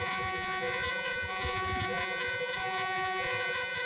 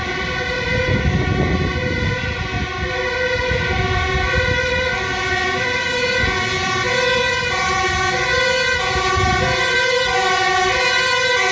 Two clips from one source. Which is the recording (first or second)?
second